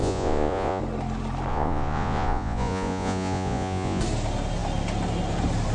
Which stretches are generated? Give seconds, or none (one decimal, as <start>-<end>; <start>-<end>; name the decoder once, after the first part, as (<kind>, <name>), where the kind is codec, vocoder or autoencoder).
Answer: 0.0-0.8 (vocoder, Vocos); 1.5-4.0